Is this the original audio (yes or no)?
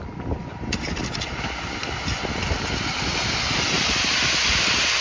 yes